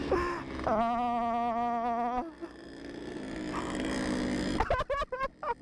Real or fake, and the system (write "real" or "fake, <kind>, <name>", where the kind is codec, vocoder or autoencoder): real